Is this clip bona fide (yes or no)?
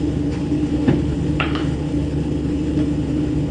no